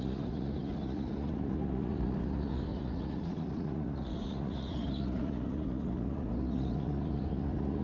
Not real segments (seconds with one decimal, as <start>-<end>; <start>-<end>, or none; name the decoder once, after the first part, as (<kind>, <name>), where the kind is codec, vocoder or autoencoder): 0.0-7.8 (vocoder, Vocos)